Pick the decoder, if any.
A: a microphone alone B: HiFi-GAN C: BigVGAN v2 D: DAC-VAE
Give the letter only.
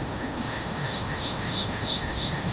D